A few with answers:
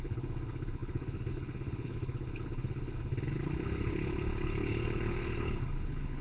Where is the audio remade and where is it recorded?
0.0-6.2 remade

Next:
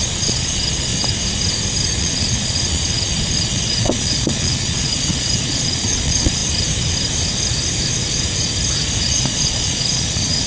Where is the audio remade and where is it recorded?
0.0-0.9 remade; 0.9-2.0 recorded; 2.0-6.4 remade; 6.4-9.0 recorded; 9.0-10.5 remade

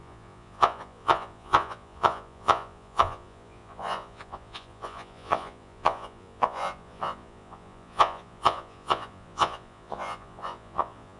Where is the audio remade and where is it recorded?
0.0-11.2 remade

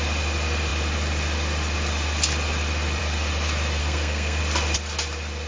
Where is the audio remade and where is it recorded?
0.0-3.8 recorded; 3.8-4.4 remade; 4.4-5.5 recorded

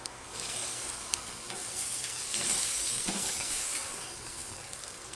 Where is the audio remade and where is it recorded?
0.0-5.2 remade

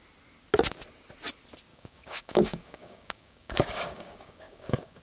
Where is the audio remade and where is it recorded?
0.0-1.7 recorded; 1.7-5.0 remade

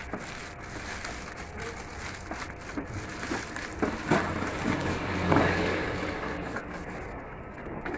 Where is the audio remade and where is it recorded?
0.0-4.8 recorded; 4.8-8.0 remade